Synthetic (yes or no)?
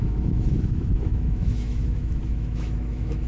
yes